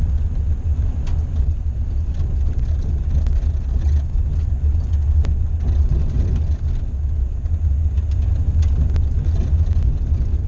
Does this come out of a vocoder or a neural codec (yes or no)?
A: no